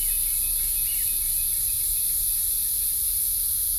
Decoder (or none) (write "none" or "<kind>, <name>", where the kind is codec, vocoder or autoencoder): none